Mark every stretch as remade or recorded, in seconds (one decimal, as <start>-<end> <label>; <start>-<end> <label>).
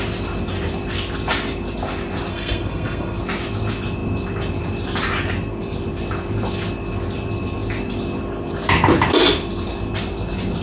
0.0-2.3 recorded; 2.3-3.2 remade; 3.2-10.6 recorded